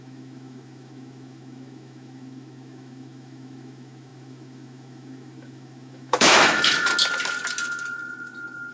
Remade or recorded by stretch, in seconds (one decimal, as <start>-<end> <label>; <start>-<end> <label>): 0.0-6.9 remade; 6.9-8.7 recorded

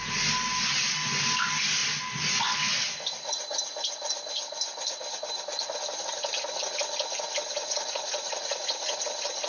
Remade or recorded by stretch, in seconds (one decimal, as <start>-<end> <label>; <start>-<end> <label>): 0.0-7.6 recorded; 7.6-9.0 remade; 9.0-9.5 recorded

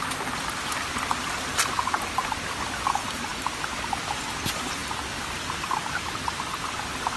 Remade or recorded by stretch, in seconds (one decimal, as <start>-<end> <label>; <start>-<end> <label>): 0.0-7.2 recorded